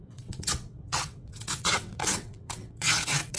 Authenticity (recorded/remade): remade